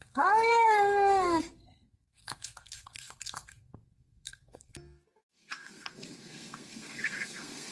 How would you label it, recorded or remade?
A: remade